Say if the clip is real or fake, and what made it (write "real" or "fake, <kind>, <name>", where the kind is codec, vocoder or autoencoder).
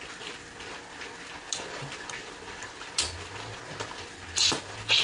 real